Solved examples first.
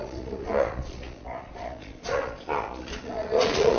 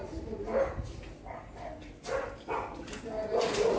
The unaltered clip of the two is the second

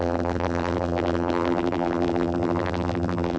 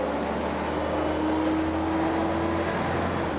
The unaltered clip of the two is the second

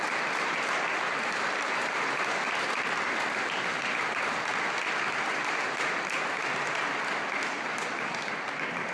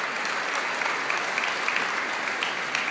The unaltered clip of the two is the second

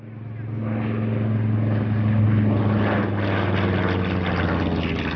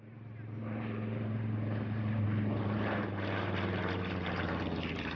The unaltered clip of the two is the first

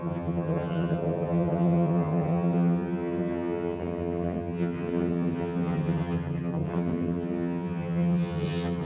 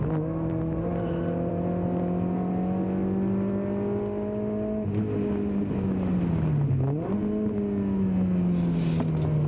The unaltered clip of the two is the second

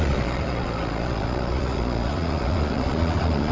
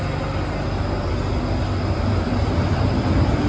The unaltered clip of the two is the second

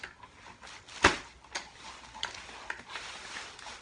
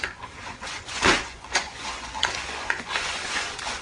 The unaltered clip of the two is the first